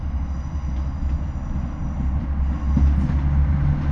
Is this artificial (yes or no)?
no